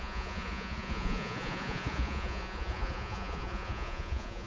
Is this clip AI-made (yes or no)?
yes